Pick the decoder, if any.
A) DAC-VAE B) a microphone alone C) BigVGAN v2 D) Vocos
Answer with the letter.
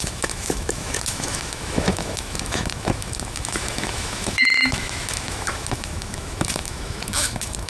A